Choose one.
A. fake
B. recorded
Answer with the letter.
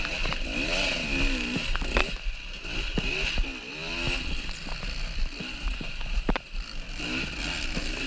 B